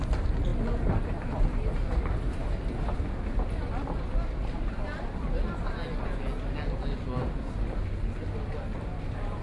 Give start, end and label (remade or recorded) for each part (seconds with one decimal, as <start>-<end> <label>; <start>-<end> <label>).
0.0-9.4 recorded